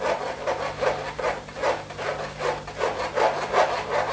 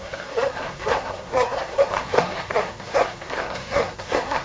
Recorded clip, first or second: first